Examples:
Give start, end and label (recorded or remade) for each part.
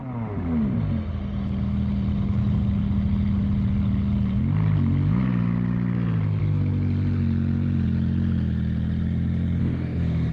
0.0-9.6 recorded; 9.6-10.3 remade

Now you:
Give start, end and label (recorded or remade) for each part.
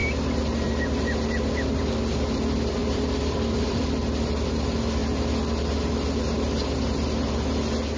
0.0-2.8 recorded; 2.8-4.0 remade; 4.0-8.0 recorded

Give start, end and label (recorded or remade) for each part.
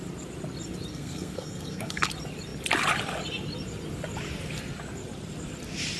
0.0-0.9 recorded; 0.9-2.1 remade; 2.1-6.0 recorded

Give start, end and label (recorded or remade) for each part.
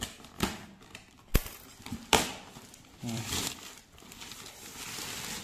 0.0-1.3 recorded; 1.3-4.5 remade; 4.5-5.4 recorded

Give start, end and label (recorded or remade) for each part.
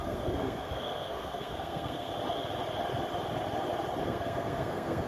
0.0-2.1 remade; 2.1-4.0 recorded; 4.0-5.1 remade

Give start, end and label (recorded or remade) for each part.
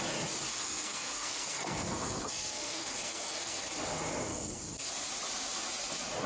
0.0-0.5 recorded; 0.5-3.7 remade; 3.7-4.3 recorded; 4.3-4.9 remade; 4.9-6.3 recorded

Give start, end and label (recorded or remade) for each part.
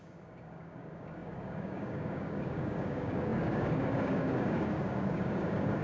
0.0-5.8 remade